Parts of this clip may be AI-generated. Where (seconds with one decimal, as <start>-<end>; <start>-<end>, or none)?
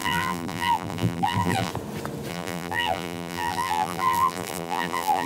0.0-1.7; 2.3-5.3